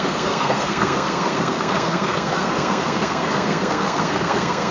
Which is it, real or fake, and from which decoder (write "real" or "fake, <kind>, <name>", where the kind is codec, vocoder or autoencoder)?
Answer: fake, codec, SNAC